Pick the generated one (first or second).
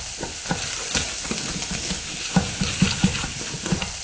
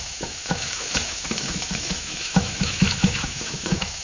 second